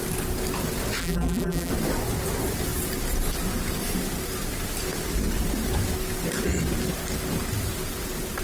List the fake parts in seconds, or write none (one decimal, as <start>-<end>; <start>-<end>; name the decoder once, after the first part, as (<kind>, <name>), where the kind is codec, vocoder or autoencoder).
1.0-1.7 (vocoder, BigVGAN v2)